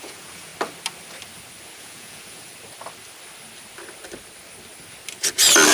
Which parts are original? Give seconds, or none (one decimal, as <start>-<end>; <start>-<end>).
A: 0.5-1.8; 2.5-5.7